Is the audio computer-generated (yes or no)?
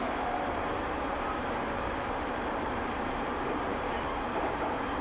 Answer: yes